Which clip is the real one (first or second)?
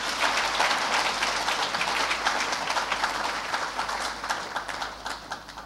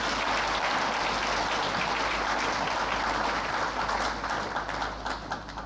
second